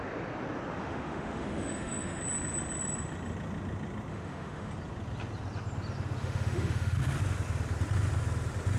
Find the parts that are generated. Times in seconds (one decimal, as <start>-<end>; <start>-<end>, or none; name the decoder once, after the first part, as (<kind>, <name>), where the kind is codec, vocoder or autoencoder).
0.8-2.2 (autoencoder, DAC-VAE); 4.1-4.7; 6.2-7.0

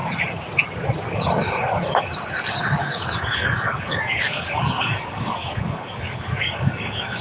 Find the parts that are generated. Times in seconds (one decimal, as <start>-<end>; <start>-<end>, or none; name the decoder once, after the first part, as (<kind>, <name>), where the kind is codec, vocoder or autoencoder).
2.8-7.2 (codec, DAC)

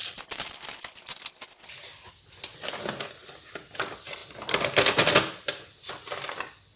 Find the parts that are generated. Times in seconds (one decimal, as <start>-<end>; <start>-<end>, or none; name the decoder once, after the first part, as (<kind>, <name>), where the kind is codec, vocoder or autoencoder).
none